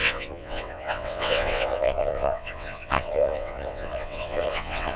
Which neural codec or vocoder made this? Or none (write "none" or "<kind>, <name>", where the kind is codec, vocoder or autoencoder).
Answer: vocoder, WaveNeXt